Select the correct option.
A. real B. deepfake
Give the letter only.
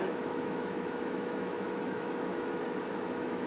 B